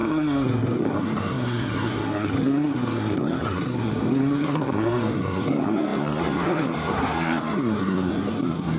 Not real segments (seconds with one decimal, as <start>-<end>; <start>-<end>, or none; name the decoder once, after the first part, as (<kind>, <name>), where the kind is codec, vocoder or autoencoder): 0.0-8.8 (codec, SNAC)